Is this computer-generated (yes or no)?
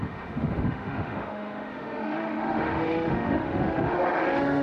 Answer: yes